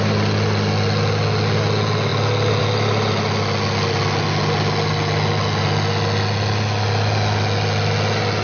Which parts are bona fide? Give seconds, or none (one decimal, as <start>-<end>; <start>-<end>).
0.0-8.4